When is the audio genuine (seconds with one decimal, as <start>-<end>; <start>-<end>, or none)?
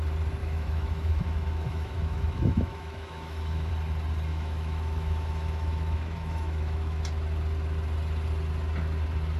0.0-0.4; 3.7-4.3; 7.0-9.4